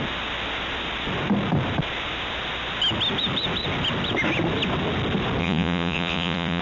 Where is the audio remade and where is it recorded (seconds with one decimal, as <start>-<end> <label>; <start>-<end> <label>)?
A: 0.0-5.4 recorded; 5.4-6.6 remade